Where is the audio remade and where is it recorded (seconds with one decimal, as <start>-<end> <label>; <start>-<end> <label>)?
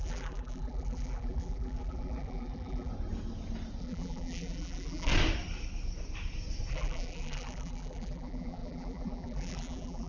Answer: 0.0-2.9 remade; 2.9-3.8 recorded; 3.8-5.1 remade; 5.1-6.7 recorded; 6.7-10.1 remade